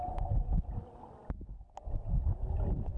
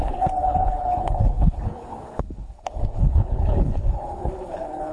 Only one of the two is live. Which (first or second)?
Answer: first